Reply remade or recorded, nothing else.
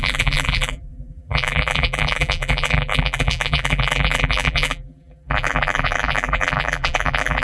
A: remade